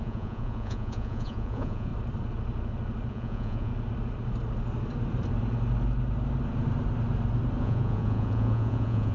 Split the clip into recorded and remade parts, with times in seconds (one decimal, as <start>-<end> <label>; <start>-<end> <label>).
0.0-1.9 remade; 1.9-3.1 recorded; 3.1-3.7 remade; 3.7-7.6 recorded; 7.6-9.1 remade

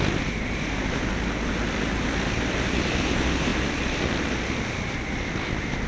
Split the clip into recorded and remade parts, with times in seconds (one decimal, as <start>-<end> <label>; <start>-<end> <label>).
0.0-5.9 recorded

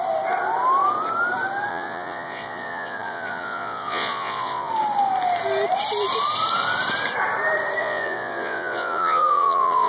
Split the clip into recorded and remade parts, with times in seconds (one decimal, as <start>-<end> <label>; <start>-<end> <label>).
0.0-1.7 recorded; 1.7-4.7 remade; 4.7-7.8 recorded; 7.8-9.9 remade

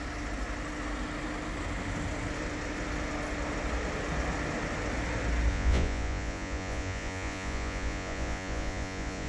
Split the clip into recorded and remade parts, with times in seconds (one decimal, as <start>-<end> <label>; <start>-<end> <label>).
0.0-5.5 recorded; 5.5-9.3 remade